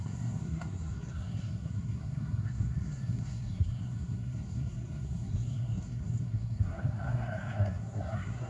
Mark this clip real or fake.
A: fake